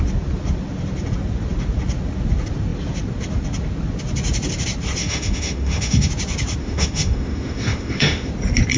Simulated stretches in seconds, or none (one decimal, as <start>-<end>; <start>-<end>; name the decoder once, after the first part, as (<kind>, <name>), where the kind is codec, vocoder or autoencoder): 5.0-6.1 (autoencoder, DAC-VAE); 6.6-8.3